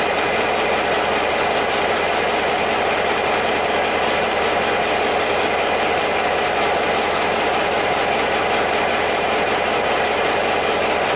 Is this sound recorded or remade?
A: recorded